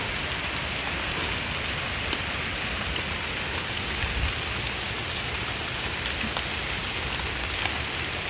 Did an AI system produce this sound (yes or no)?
no